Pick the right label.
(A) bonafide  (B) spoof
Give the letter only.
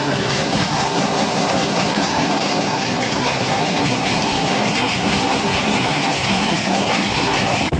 B